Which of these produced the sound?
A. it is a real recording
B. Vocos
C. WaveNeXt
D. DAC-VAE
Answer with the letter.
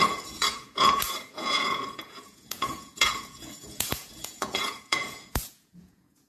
B